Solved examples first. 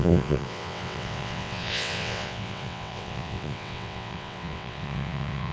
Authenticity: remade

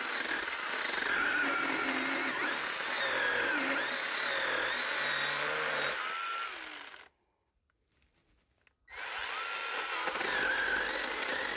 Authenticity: recorded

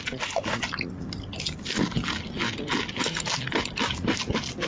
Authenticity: recorded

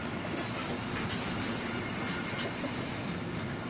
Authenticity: recorded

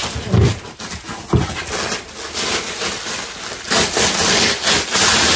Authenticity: recorded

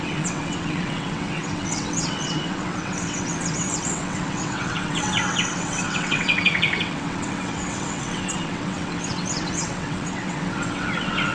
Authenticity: remade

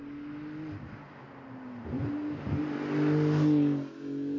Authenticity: recorded